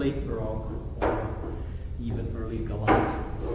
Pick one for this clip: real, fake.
real